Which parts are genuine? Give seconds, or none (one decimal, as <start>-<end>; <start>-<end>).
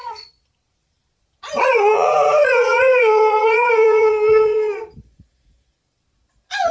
none